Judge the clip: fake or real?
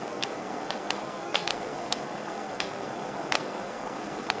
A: fake